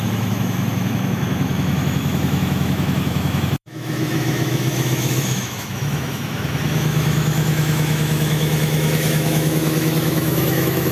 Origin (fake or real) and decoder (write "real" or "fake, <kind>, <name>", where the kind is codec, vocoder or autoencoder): fake, autoencoder, DAC-VAE